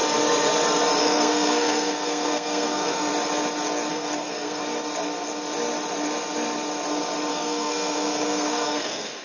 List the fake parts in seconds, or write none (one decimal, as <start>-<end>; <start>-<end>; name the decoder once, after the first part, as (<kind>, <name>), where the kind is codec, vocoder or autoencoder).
1.0-3.1 (codec, SNAC); 3.9-4.6; 7.3-9.2